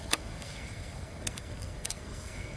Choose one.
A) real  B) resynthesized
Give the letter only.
B